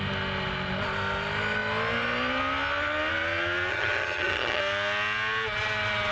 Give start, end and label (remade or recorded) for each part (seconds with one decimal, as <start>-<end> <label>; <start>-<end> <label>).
0.0-3.7 recorded; 3.7-4.6 remade; 4.6-6.1 recorded